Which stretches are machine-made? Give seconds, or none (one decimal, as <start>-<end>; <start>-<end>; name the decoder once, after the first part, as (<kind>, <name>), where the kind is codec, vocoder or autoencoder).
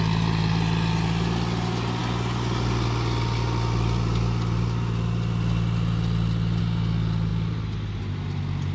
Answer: none